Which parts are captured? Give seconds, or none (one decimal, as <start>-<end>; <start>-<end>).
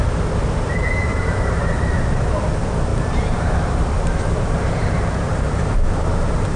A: 0.0-1.1; 2.0-2.9; 5.9-6.6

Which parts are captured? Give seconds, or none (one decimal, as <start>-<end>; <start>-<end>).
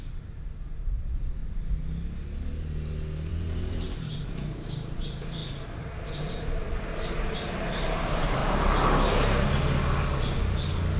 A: 1.4-3.3; 8.4-11.0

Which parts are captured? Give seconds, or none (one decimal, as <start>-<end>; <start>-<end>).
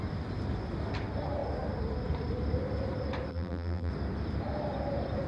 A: 0.0-3.3; 3.9-5.3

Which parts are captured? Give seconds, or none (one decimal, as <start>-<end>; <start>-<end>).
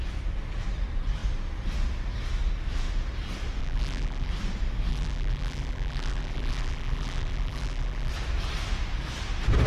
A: 0.0-3.6; 4.3-4.9; 8.1-9.7